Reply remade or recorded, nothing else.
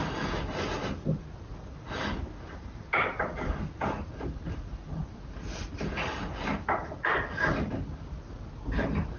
recorded